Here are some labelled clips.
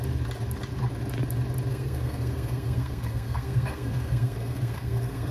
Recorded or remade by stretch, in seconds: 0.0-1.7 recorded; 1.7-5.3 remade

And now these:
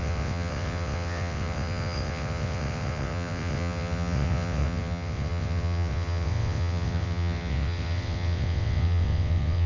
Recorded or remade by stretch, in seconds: 0.0-9.7 remade

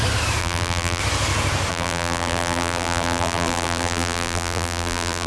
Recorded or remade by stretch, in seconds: 0.0-0.4 recorded; 0.4-1.0 remade; 1.0-1.7 recorded; 1.7-5.3 remade

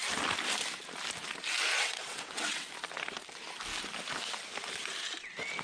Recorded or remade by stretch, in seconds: 0.0-1.7 recorded; 1.7-2.7 remade; 2.7-5.6 recorded